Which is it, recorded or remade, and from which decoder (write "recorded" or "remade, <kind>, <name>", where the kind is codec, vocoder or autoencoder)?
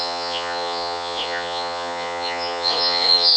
remade, vocoder, Vocos